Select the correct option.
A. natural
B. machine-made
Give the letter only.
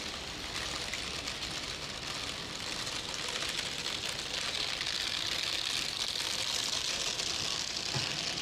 A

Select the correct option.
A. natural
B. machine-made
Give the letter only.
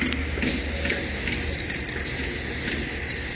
A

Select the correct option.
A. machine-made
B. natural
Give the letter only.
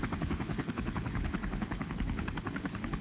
A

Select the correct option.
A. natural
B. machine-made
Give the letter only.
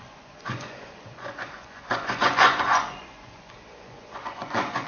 B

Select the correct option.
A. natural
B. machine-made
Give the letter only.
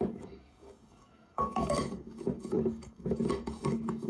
B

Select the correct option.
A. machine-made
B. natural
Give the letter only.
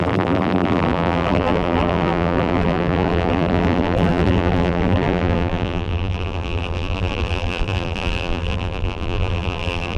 A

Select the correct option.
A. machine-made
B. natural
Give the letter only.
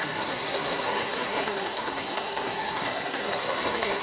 A